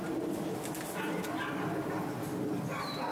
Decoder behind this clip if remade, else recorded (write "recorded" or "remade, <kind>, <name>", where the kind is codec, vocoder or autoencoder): recorded